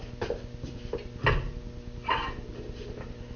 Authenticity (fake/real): real